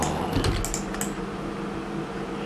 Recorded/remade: recorded